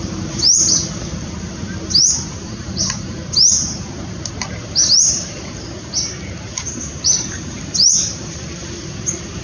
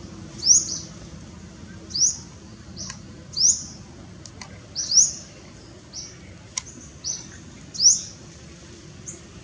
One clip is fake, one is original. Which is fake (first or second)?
first